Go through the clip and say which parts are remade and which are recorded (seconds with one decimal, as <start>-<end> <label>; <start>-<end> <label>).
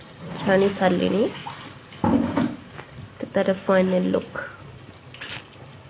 0.0-5.9 recorded